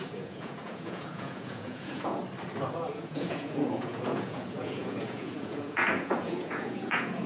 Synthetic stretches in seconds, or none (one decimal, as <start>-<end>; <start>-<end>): 0.0-2.2; 2.9-7.3